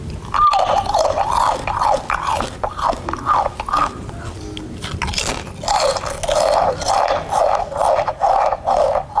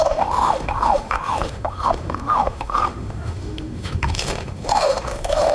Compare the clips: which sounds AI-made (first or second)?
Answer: second